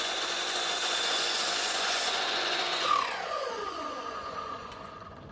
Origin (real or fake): fake